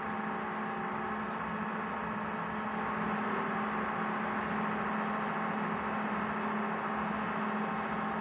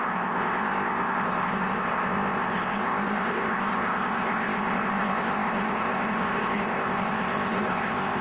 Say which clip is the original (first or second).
first